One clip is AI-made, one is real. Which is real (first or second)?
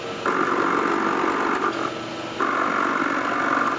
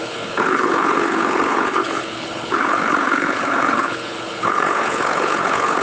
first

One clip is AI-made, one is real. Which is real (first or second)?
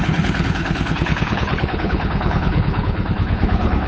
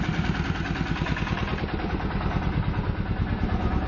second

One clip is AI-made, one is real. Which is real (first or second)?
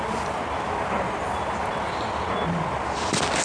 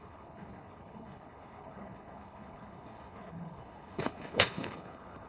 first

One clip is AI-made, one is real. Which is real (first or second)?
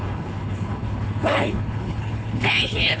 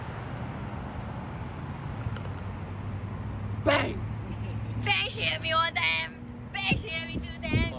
second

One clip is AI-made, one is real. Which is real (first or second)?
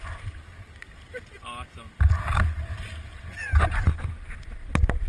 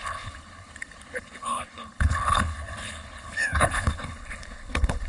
first